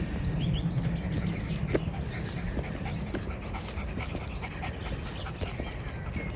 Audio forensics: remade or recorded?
recorded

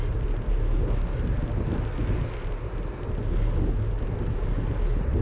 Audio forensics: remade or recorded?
recorded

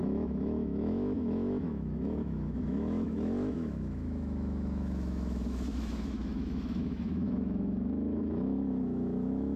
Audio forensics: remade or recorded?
remade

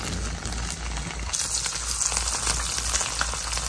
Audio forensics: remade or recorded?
recorded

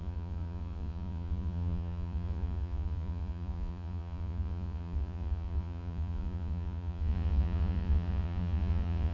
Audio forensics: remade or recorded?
remade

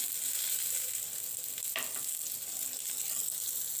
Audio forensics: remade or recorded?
recorded